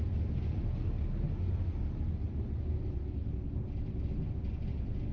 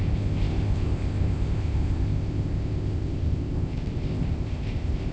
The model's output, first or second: second